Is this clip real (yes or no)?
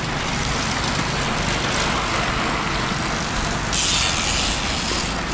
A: yes